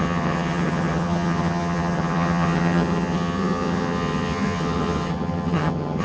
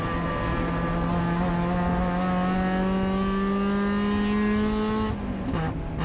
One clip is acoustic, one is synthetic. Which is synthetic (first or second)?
first